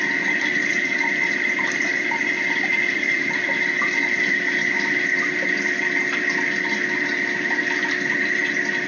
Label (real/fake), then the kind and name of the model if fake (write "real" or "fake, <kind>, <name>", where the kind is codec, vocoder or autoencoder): real